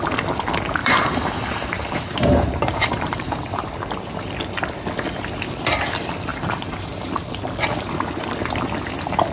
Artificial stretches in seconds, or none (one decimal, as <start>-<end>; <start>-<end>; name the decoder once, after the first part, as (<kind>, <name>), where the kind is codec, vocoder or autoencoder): 0.8-3.6 (vocoder, BigVGAN v2); 6.3-7.3